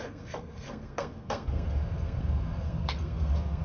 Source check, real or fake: fake